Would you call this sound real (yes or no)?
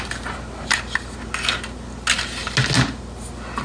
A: yes